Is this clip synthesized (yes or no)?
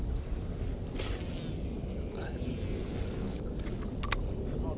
no